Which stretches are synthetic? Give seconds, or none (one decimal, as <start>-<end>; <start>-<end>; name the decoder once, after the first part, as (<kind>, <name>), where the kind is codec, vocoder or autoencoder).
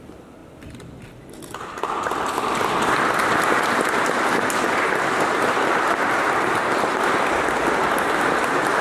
none